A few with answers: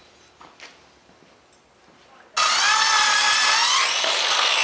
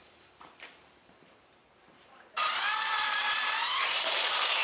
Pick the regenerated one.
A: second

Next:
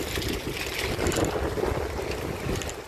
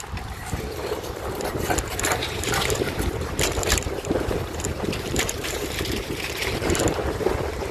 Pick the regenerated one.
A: second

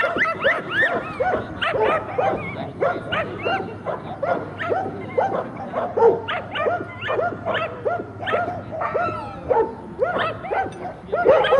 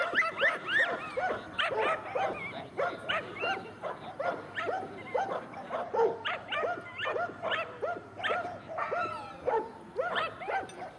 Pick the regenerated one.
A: second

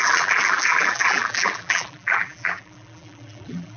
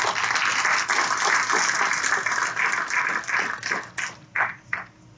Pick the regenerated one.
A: first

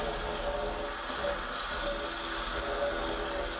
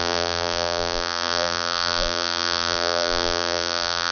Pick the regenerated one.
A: second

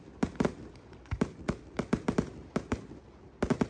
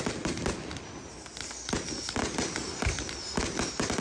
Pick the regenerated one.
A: first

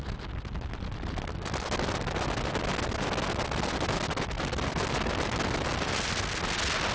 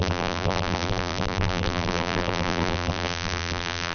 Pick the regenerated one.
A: second